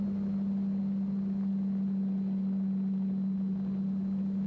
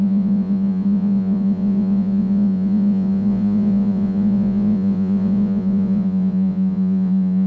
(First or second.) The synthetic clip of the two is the second